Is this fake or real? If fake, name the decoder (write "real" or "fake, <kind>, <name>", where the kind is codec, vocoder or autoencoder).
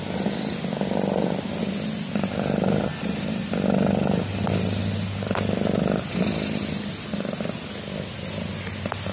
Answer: real